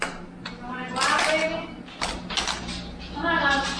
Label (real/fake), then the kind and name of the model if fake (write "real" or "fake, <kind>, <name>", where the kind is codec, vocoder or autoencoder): real